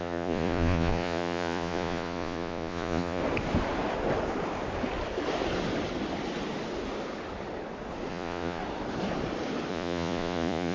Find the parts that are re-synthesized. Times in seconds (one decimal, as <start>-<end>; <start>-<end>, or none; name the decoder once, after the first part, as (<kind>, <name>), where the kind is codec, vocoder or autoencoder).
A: 0.0-3.2 (vocoder, Vocos); 8.1-8.6; 9.7-10.7